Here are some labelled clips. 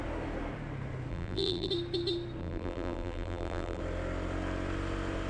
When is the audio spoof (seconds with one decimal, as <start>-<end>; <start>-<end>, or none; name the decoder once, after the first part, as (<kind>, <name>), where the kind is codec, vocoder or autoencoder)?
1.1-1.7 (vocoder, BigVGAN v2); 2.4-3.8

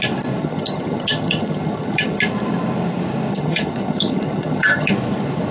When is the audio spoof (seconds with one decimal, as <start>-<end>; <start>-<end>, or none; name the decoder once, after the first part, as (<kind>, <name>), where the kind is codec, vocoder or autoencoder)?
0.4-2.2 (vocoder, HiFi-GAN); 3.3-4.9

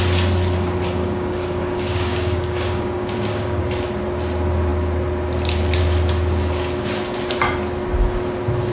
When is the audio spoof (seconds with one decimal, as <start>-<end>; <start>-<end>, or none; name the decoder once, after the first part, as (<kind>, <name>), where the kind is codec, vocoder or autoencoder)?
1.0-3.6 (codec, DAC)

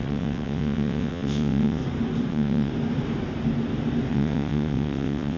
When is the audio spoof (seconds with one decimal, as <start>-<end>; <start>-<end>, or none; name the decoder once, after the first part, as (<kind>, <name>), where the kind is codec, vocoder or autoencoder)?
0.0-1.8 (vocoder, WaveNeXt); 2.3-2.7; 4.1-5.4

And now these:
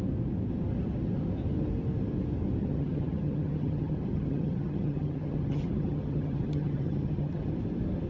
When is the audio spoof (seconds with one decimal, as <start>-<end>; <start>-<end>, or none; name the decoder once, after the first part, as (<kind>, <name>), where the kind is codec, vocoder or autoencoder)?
2.6-7.5 (vocoder, HiFi-GAN)

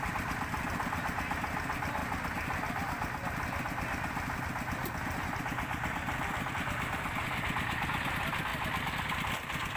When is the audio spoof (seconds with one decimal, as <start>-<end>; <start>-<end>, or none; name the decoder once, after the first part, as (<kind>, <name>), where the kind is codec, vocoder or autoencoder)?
none